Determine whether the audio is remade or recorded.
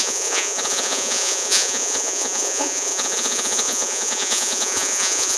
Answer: remade